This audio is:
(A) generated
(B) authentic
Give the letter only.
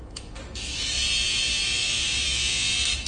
A